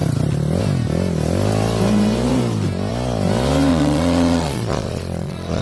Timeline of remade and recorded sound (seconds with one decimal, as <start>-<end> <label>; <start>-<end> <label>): 0.0-3.7 recorded; 3.7-5.6 remade